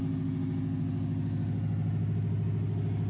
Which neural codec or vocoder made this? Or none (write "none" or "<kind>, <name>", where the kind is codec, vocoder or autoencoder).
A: none